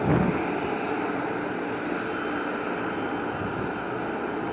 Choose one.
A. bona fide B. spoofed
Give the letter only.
A